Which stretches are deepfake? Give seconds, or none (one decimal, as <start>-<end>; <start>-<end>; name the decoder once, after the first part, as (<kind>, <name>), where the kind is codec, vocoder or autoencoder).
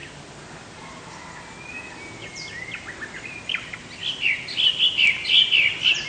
none